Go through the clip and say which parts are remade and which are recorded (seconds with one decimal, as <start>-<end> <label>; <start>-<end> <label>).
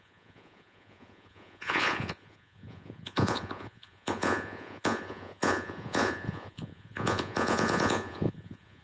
0.0-8.8 remade